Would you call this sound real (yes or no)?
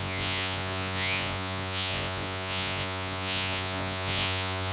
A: no